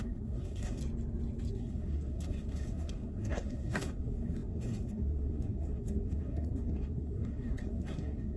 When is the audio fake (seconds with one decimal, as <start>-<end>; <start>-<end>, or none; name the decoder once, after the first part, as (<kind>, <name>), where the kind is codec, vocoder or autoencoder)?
0.0-0.8 (codec, SNAC); 1.5-8.4